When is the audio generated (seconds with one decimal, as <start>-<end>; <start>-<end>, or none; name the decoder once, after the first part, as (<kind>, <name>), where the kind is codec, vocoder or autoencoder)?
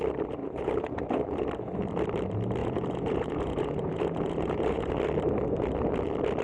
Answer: 0.4-1.0 (vocoder, Vocos); 2.6-4.9